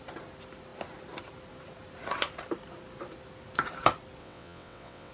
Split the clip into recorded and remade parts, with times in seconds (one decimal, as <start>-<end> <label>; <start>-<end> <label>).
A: 0.0-4.2 recorded; 4.2-5.1 remade